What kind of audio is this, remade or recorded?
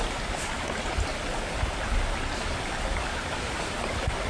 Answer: recorded